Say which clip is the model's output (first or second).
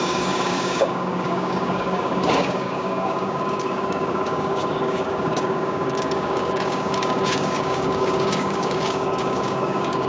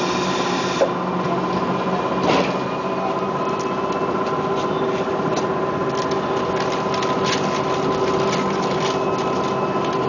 first